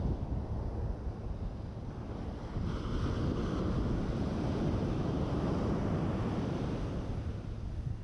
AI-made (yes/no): no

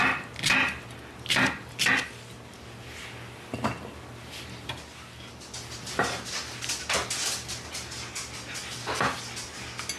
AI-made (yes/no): no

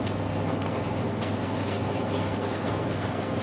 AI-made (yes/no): yes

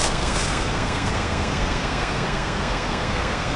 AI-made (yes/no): yes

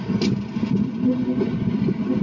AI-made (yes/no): no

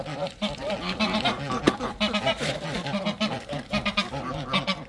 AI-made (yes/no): no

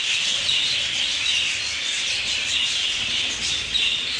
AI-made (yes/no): no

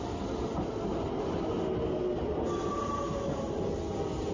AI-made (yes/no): no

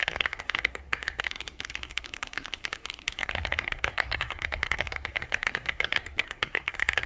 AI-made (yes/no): yes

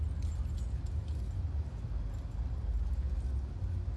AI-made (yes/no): no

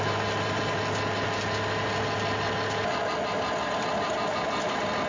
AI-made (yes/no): no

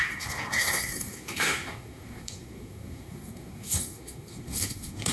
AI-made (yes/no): yes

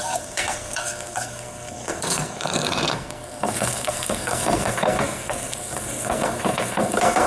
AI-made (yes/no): yes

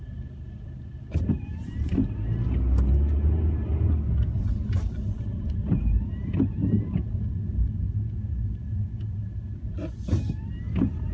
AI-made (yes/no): no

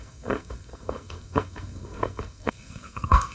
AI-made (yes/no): yes